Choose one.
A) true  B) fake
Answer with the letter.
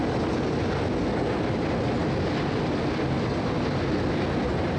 A